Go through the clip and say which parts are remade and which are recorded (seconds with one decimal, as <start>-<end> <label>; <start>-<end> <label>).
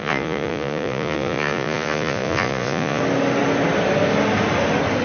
0.0-3.0 remade; 3.0-5.0 recorded